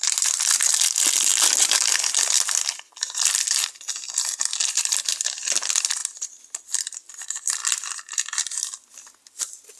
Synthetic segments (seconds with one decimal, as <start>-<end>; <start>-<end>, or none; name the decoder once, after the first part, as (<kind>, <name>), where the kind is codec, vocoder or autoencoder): none